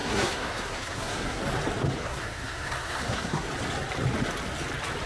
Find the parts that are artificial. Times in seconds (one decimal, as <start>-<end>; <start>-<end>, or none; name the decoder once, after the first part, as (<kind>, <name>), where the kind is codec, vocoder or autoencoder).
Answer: 0.0-1.4 (codec, SNAC); 2.0-3.5